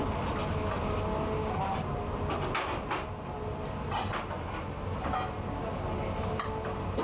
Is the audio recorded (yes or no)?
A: yes